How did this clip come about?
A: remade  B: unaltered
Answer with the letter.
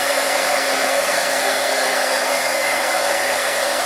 A